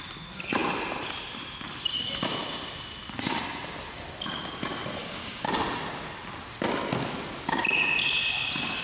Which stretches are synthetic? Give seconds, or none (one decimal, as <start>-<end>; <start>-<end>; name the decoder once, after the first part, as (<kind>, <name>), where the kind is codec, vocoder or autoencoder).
5.0-5.5 (codec, DAC)